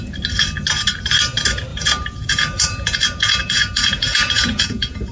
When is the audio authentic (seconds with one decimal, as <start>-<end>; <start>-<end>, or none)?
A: 0.0-1.7